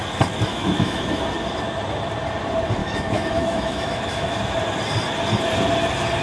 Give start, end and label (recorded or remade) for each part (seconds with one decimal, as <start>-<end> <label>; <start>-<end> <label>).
0.0-0.5 recorded; 0.5-1.2 remade; 1.2-2.8 recorded; 2.8-4.4 remade; 4.4-6.2 recorded

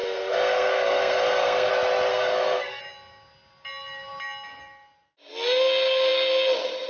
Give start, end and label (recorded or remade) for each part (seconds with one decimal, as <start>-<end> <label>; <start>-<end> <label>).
0.0-1.7 remade; 1.7-2.1 recorded; 2.1-2.8 remade; 2.8-6.9 recorded

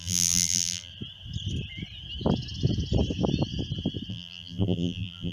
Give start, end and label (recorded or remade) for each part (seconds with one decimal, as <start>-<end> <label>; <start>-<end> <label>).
0.0-0.9 remade; 0.9-4.1 recorded; 4.1-5.3 remade

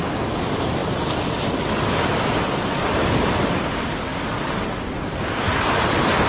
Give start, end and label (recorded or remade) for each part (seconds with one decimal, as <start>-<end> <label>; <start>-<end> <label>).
0.0-6.3 recorded

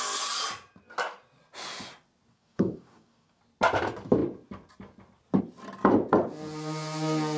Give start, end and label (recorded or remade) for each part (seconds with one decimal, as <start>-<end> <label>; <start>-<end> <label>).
0.0-2.3 recorded; 2.3-3.4 remade; 3.4-7.4 recorded